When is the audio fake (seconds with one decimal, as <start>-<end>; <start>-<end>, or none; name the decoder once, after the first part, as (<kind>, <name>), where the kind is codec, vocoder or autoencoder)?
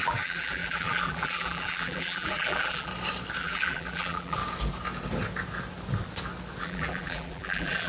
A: 0.0-2.9 (vocoder, BigVGAN v2); 3.4-4.4; 6.6-7.9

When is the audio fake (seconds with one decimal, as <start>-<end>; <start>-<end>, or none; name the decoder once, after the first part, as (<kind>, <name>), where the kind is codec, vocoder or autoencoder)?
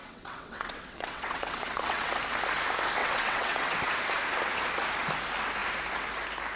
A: 0.0-2.1 (vocoder, WaveNeXt); 3.0-3.9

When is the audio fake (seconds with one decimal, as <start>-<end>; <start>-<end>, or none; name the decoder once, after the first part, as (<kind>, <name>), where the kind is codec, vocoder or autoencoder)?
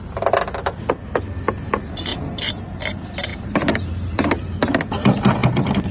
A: 2.1-2.8 (vocoder, BigVGAN v2); 3.3-4.5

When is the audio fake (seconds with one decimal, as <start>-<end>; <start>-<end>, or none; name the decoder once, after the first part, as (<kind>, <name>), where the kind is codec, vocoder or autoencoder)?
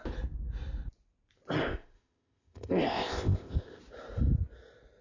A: 1.6-3.8 (codec, ZipCodec)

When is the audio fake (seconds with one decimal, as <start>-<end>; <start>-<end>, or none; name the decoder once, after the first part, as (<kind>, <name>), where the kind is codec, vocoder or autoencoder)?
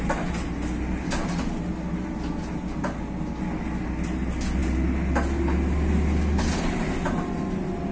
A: none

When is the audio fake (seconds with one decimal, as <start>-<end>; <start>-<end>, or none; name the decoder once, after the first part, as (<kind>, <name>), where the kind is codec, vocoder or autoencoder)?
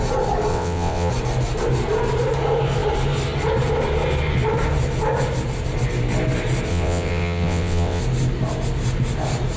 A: 0.5-1.1 (vocoder, WaveNeXt); 6.7-8.0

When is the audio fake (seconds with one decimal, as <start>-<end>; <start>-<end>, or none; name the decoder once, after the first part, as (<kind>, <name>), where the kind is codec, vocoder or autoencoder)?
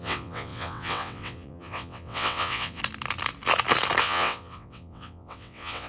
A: 0.0-2.8 (vocoder, WaveNeXt); 4.0-5.9